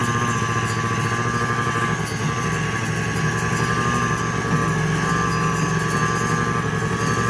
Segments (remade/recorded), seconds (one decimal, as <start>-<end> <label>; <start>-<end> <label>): 0.0-7.3 recorded